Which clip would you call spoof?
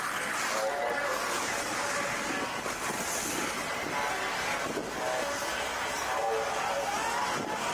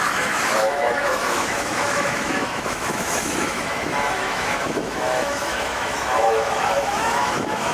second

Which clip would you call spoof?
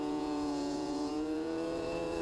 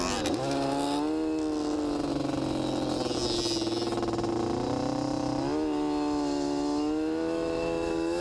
first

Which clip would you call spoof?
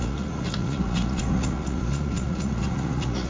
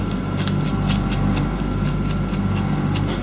first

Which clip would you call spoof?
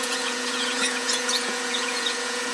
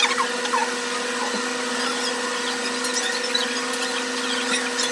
first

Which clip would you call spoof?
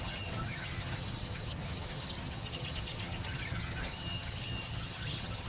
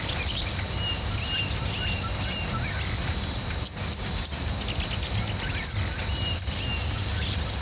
first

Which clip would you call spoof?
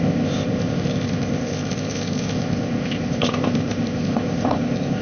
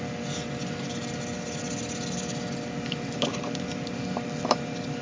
first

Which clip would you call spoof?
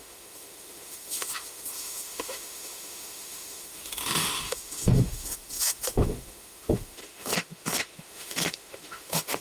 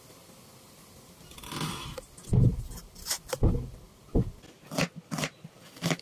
first